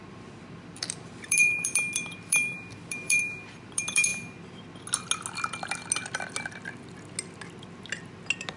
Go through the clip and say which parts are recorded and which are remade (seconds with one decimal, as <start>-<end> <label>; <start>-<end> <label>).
0.0-4.1 remade; 4.1-8.6 recorded

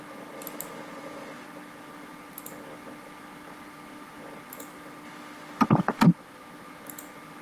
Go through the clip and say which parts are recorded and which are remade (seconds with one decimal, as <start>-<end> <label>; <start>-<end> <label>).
0.0-7.4 recorded

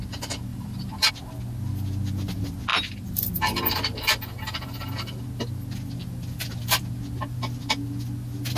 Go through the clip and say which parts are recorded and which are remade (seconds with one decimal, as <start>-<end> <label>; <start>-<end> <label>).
0.0-0.5 recorded; 0.5-1.1 remade; 1.1-2.7 recorded; 2.7-5.2 remade; 5.2-6.0 recorded; 6.0-6.7 remade; 6.7-8.6 recorded

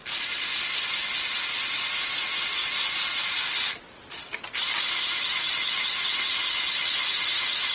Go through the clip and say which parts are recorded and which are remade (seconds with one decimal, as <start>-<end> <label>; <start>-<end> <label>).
0.0-2.6 recorded; 2.6-3.4 remade; 3.4-7.7 recorded

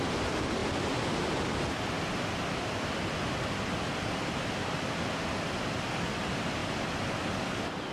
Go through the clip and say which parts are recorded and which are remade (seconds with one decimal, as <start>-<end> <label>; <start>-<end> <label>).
0.0-0.6 recorded; 0.6-5.0 remade; 5.0-7.9 recorded

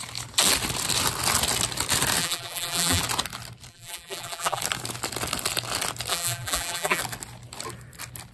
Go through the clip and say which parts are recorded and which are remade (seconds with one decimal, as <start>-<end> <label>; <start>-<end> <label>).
0.0-2.2 recorded; 2.2-3.0 remade; 3.0-3.7 recorded; 3.7-4.6 remade; 4.6-6.1 recorded; 6.1-7.0 remade; 7.0-8.3 recorded